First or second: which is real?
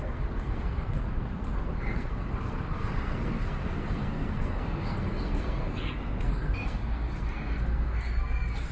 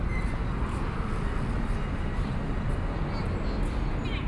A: second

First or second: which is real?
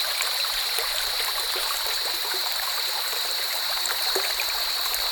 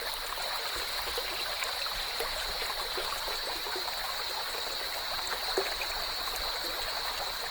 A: second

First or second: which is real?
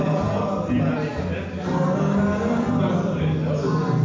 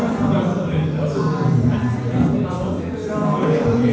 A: first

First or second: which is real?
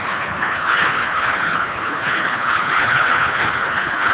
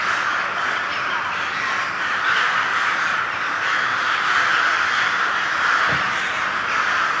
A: second